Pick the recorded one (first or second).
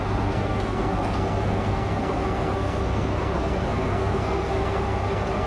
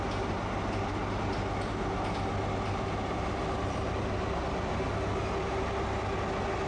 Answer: second